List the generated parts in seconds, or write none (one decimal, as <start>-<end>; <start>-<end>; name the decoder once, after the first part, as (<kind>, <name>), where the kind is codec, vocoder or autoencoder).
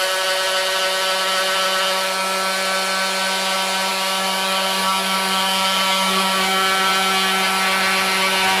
3.9-6.9 (codec, DAC)